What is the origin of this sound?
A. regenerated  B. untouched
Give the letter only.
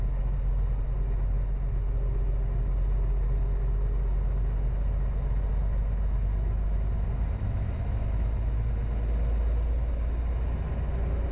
B